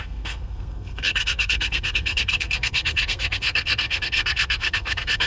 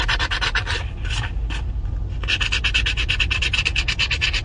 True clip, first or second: second